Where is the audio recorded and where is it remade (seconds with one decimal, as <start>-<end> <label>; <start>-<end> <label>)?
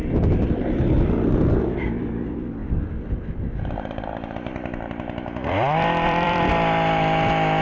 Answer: 0.0-1.5 remade; 1.5-2.6 recorded; 2.6-6.5 remade; 6.5-7.6 recorded